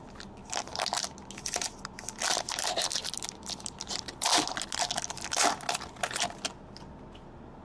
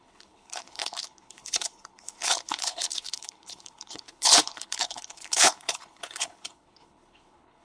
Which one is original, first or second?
first